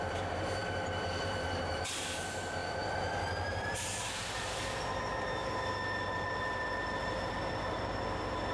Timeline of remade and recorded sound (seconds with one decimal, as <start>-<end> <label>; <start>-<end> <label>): 0.0-8.5 remade